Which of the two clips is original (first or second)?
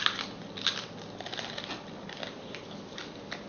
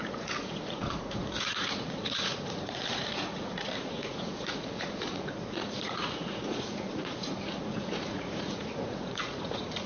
first